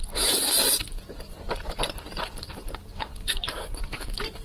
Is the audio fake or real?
fake